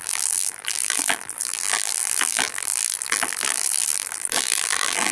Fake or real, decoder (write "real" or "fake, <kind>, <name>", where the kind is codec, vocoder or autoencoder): fake, vocoder, BigVGAN v2